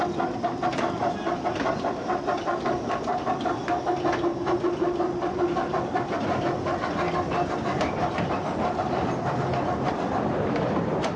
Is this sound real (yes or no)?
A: yes